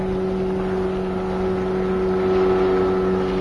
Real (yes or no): yes